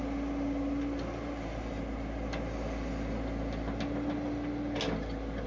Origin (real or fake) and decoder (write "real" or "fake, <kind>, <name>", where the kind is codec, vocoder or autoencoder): real